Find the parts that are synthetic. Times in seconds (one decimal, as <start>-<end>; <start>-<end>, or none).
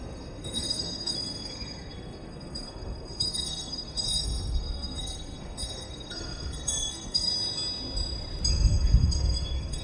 0.0-7.3; 8.5-9.8